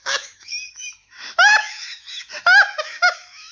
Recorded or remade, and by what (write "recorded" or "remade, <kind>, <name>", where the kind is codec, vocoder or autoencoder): remade, autoencoder, DAC-VAE